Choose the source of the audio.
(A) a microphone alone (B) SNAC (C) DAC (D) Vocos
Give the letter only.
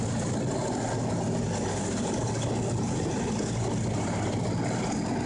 A